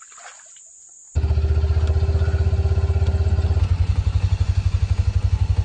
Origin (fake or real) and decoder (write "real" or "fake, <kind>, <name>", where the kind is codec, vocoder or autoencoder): real